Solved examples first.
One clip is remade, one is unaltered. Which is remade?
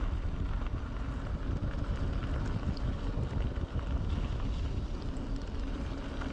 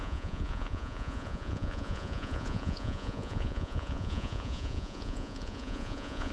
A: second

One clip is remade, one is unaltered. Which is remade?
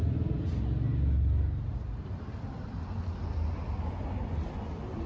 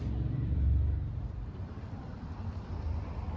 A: second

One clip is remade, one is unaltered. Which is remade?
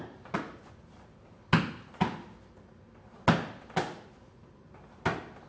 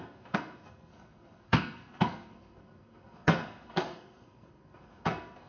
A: second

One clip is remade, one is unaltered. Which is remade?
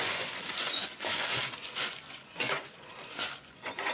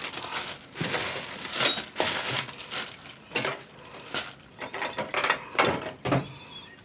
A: first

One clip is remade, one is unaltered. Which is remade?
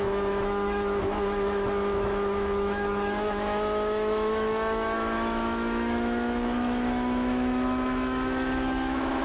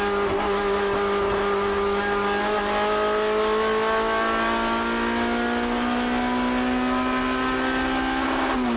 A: first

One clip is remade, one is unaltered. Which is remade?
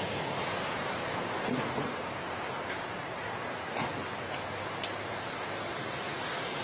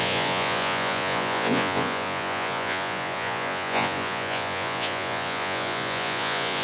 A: second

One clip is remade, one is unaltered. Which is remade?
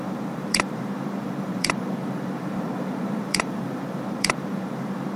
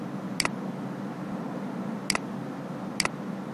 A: first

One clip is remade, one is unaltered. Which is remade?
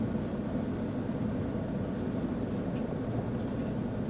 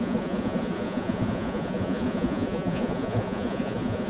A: second